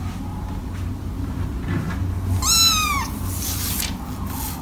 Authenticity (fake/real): real